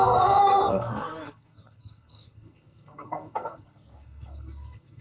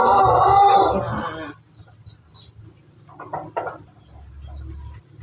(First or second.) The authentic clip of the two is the second